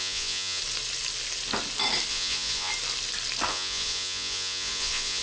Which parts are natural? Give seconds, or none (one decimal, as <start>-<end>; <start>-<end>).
0.6-2.1; 2.7-3.5